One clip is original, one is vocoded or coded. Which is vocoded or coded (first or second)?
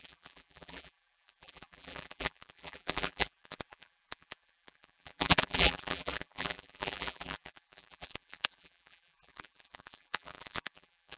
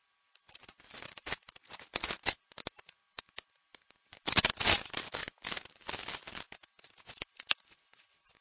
first